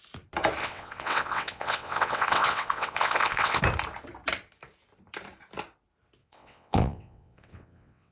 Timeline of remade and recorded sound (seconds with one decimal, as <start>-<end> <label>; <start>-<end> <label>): 0.0-0.6 recorded; 0.6-3.6 remade; 3.6-6.2 recorded; 6.2-8.1 remade